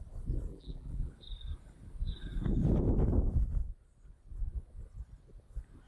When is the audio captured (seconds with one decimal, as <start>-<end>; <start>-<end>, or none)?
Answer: 0.0-0.5; 1.1-5.9